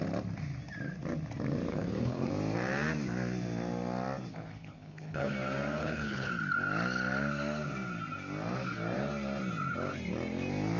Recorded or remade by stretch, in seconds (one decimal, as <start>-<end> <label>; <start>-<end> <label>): 0.0-1.7 recorded; 1.7-2.3 remade; 2.3-4.3 recorded; 4.3-5.3 remade; 5.3-5.8 recorded; 5.8-6.3 remade; 6.3-10.8 recorded